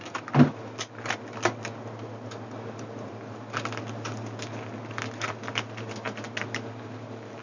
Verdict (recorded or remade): recorded